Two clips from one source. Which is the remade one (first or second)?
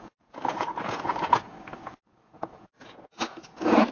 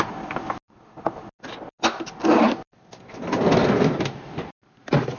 first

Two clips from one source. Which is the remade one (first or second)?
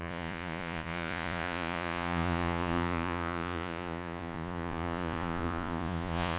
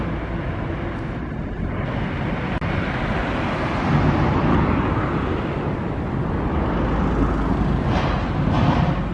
first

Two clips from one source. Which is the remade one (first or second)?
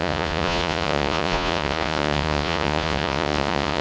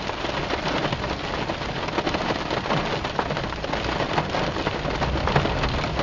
first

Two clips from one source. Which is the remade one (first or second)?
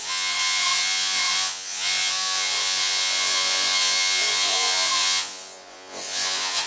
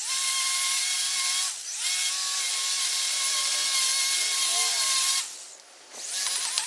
first